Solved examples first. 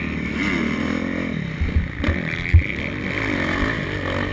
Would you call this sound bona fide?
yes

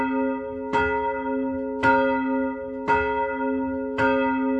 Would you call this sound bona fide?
yes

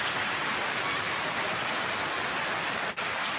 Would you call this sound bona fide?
yes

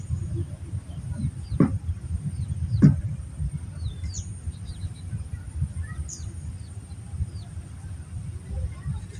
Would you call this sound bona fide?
yes